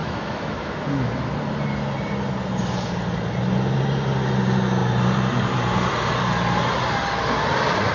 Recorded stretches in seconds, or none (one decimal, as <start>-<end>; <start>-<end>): 1.1-7.9